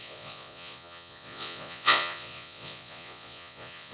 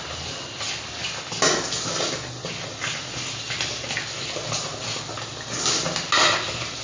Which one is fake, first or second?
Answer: first